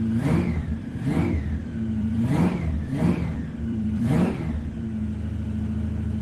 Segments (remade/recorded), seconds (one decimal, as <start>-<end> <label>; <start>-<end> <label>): 0.0-0.8 recorded; 0.8-4.5 remade; 4.5-6.2 recorded